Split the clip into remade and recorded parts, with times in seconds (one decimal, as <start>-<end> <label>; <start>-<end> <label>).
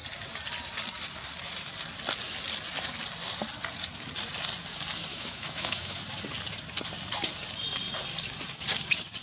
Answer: 0.0-5.1 recorded; 5.1-6.0 remade; 6.0-9.2 recorded